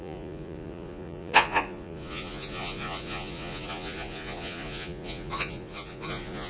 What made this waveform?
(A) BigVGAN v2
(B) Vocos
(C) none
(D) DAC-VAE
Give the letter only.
B